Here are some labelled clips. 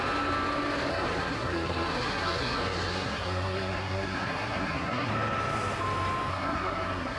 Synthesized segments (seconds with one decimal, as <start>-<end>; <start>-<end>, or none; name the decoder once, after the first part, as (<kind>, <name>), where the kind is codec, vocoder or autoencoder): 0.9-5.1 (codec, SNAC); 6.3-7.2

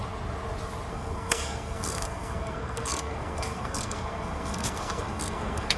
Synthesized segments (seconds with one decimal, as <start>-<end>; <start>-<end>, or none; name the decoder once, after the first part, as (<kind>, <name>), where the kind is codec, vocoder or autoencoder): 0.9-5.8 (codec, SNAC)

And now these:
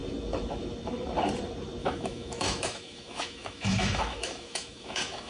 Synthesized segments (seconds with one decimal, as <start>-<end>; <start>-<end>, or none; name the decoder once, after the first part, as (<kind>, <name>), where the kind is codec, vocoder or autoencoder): 1.8-5.3 (autoencoder, DAC-VAE)